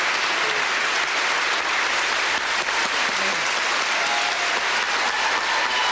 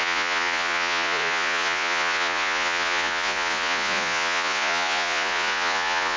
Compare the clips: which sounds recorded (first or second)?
first